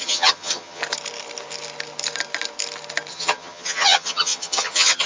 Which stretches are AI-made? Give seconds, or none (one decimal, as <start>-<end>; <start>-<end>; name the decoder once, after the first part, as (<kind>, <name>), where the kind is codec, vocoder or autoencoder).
0.0-0.8 (vocoder, HiFi-GAN); 3.1-5.1